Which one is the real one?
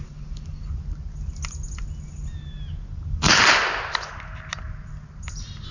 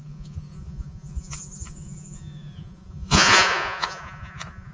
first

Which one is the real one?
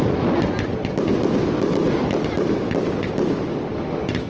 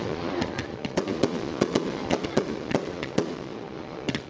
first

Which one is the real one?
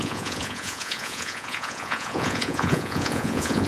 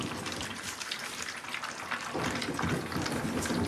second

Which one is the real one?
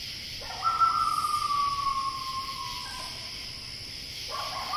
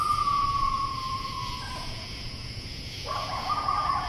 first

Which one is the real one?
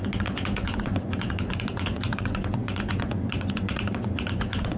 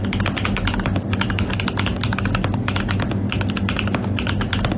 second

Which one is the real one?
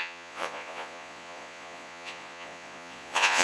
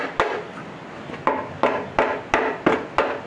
second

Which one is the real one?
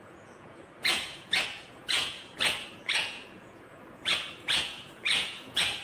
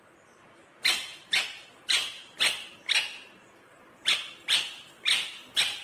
second